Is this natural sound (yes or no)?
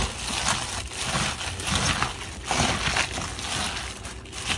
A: yes